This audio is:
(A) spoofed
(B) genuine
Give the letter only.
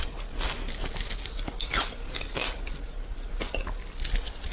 B